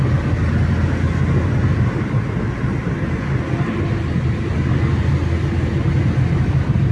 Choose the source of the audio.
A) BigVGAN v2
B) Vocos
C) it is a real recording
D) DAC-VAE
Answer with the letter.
C